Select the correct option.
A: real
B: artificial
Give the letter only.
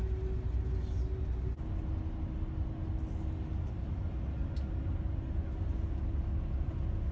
A